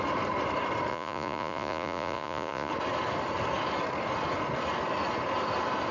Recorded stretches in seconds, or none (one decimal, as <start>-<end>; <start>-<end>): 0.0-0.9; 2.7-5.9